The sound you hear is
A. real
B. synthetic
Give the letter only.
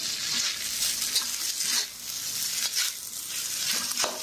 A